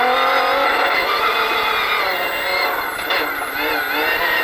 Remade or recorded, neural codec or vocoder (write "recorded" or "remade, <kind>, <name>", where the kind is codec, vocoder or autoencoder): recorded